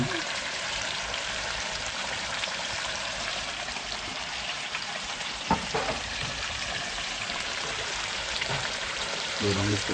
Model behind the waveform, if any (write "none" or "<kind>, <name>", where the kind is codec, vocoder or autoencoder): vocoder, BigVGAN v2